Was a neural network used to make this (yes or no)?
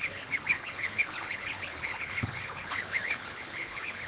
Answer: yes